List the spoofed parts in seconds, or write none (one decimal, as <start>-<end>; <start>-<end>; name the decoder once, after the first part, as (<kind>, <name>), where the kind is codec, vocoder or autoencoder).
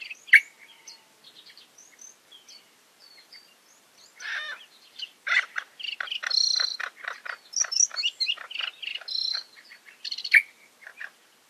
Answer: 3.0-5.6 (vocoder, BigVGAN v2)